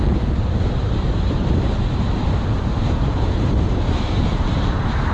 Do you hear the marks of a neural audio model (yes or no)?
yes